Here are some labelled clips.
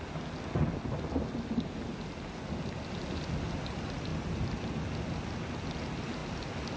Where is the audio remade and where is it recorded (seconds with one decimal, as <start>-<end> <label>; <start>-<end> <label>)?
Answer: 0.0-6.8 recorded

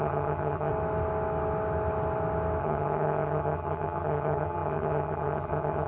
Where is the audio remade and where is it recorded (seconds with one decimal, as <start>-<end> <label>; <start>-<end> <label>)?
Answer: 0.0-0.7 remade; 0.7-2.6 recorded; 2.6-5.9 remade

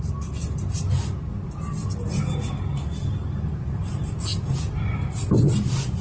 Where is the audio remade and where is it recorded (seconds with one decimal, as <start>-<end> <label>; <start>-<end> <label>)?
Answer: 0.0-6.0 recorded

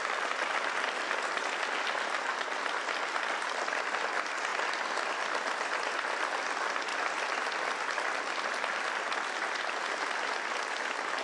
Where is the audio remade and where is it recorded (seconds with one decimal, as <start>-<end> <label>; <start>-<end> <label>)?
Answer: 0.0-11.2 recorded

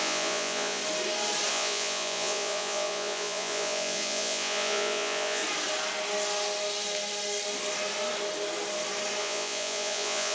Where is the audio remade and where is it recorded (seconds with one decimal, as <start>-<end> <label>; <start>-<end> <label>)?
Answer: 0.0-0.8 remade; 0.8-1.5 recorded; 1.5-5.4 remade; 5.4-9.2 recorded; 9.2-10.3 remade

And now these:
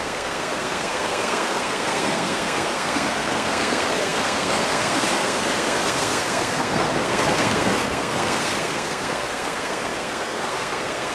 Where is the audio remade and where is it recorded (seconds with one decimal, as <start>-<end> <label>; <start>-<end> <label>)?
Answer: 0.0-11.1 remade

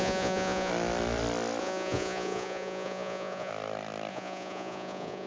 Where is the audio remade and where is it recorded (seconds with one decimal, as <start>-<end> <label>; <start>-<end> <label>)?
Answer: 0.0-0.7 remade; 0.7-1.6 recorded; 1.6-3.5 remade; 3.5-4.1 recorded; 4.1-5.3 remade

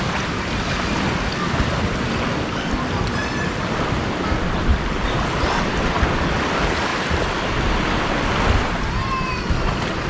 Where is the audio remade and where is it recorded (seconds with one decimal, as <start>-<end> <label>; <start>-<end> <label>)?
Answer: 0.0-10.1 recorded